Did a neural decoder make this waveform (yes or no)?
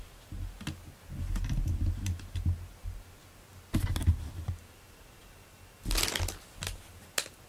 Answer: no